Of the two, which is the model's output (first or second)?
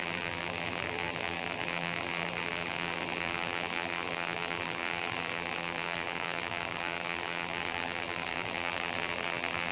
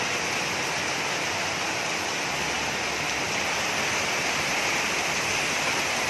first